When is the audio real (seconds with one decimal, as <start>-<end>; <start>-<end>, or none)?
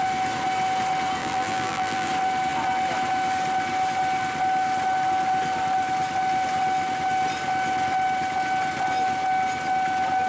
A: 0.0-1.2; 2.1-10.3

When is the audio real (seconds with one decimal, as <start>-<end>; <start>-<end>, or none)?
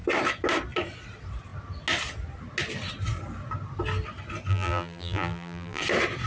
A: 0.0-4.5; 5.8-6.3